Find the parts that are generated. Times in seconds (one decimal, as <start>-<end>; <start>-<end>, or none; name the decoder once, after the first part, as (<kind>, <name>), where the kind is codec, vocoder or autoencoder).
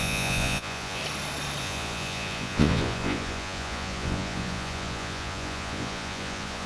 0.0-1.0 (vocoder, Vocos); 1.6-6.7